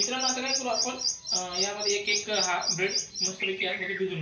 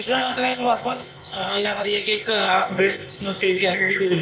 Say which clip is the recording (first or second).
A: first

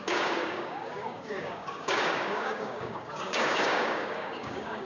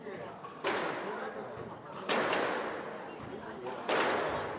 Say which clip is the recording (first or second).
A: second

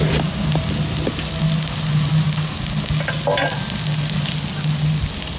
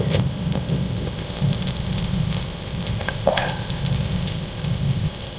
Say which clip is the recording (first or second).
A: first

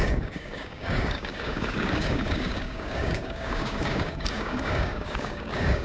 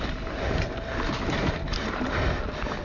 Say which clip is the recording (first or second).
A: second